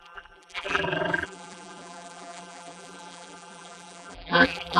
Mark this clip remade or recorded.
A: remade